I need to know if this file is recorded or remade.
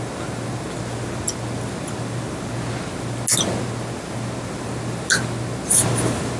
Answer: recorded